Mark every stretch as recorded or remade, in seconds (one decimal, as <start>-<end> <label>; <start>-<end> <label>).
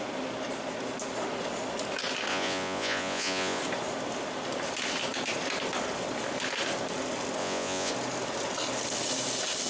0.0-2.3 recorded; 2.3-3.6 remade; 3.6-7.4 recorded; 7.4-7.9 remade; 7.9-9.7 recorded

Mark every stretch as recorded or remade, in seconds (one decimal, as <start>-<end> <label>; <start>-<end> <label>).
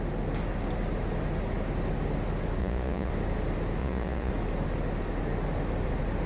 0.0-2.6 recorded; 2.6-3.1 remade; 3.1-3.8 recorded; 3.8-4.3 remade; 4.3-6.3 recorded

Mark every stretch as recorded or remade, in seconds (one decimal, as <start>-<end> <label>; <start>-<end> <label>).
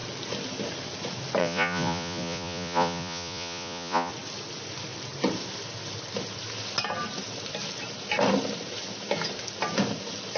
0.0-1.4 recorded; 1.4-4.1 remade; 4.1-10.4 recorded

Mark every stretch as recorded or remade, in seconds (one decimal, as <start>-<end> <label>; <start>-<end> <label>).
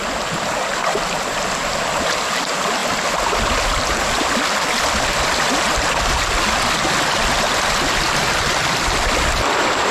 0.0-9.9 recorded